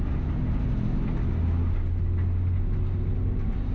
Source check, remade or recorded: recorded